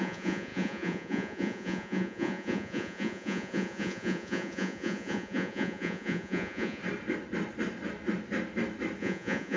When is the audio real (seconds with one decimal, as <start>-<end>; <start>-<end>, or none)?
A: 6.8-9.0